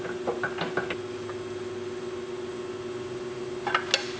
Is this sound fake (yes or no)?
no